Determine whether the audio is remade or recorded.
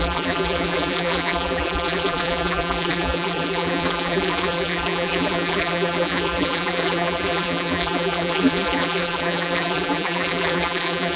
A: remade